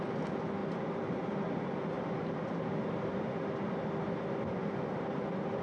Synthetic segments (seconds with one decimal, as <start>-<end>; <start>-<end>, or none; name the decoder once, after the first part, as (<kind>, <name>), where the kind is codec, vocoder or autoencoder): 0.6-2.7 (vocoder, BigVGAN v2); 4.6-5.6

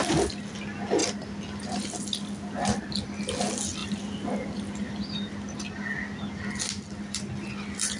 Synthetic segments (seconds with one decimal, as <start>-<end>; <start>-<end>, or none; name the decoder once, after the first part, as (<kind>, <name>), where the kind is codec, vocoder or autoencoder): 1.0-2.9 (vocoder, BigVGAN v2); 3.8-4.9

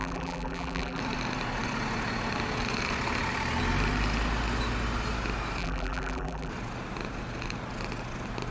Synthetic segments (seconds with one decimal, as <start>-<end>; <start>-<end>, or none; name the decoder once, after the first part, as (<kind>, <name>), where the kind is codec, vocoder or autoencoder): 0.0-1.0 (vocoder, BigVGAN v2); 5.6-6.5

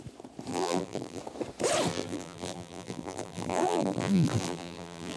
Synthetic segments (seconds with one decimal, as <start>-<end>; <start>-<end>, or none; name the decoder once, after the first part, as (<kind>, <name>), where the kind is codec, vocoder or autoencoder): 0.5-1.2 (vocoder, BigVGAN v2); 1.9-5.2

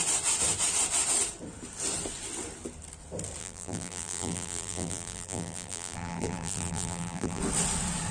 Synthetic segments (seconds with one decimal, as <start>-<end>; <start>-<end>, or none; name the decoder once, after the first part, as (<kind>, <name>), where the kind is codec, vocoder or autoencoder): 3.4-7.4 (vocoder, BigVGAN v2)

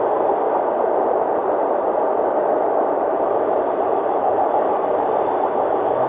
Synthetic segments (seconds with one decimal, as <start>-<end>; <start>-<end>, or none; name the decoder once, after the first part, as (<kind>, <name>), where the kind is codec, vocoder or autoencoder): 1.4-5.1 (vocoder, BigVGAN v2)

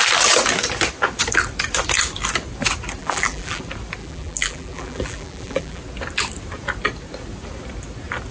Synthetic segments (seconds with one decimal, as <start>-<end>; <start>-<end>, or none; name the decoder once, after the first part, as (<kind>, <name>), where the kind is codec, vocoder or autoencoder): 3.0-3.6 (vocoder, BigVGAN v2); 4.0-5.8